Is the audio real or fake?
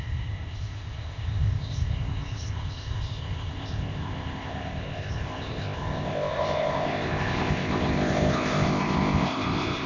fake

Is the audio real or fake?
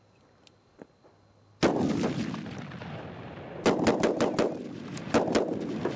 real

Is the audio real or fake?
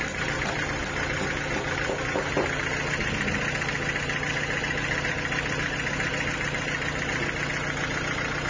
real